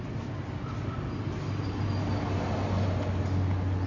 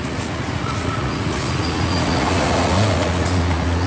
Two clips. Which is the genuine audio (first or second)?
first